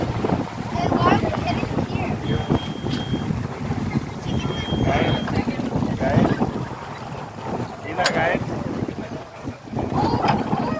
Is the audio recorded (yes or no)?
yes